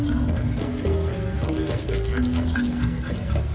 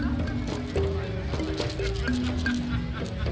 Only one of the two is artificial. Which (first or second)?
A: first